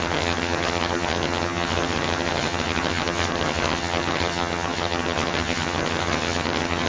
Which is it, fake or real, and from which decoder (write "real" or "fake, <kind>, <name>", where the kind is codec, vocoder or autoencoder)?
fake, vocoder, HiFi-GAN